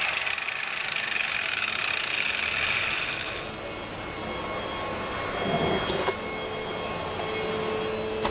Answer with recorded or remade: recorded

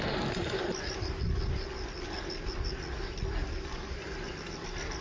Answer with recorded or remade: recorded